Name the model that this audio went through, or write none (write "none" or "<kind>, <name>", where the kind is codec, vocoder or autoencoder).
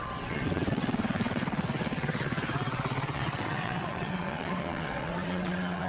vocoder, WaveNeXt